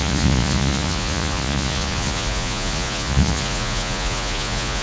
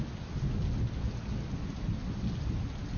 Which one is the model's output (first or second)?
first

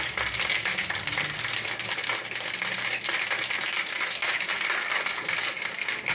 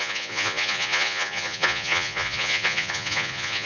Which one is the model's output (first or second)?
second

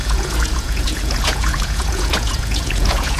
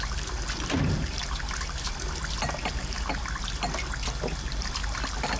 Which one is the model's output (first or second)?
first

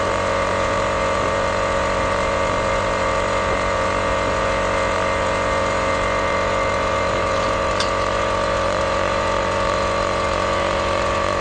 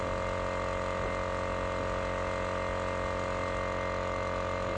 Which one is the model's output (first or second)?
first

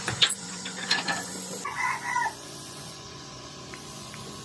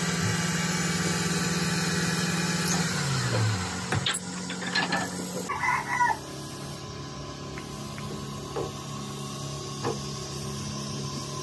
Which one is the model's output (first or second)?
first